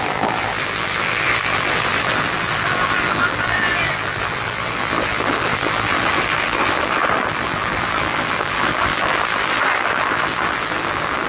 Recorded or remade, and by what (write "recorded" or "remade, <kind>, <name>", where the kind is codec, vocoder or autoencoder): remade, vocoder, BigVGAN v2